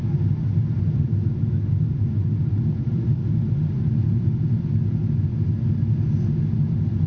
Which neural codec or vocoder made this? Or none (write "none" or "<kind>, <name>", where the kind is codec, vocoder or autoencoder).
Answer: none